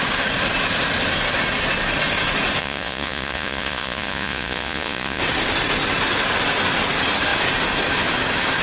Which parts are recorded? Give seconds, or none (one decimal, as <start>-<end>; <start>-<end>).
0.0-2.6; 5.2-8.6

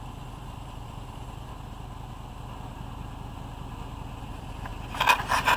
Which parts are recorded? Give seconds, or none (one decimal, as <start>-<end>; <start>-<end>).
1.5-4.2; 4.7-5.6

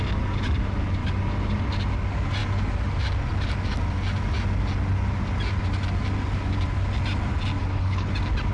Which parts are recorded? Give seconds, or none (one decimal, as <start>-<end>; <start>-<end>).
0.0-7.6; 8.1-8.5

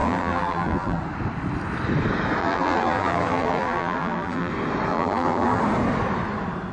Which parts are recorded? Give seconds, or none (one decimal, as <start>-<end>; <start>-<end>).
1.0-2.4; 4.5-4.9; 5.6-6.7

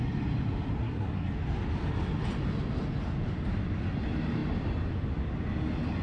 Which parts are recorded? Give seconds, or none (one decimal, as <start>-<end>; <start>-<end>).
0.0-0.8; 1.3-6.0

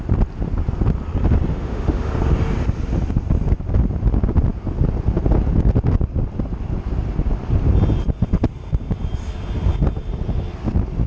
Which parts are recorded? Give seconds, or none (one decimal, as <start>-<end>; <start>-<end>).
0.0-1.5; 2.1-11.1

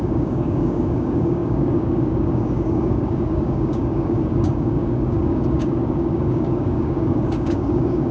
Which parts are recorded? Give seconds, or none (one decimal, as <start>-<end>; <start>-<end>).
none